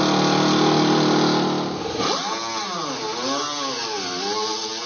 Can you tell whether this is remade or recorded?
recorded